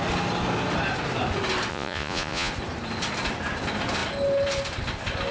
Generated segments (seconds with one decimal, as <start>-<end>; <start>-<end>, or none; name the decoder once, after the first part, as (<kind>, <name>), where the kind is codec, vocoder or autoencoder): 1.7-2.5 (vocoder, Vocos)